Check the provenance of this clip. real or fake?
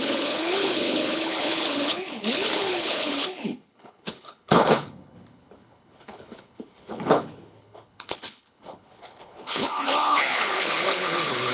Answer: fake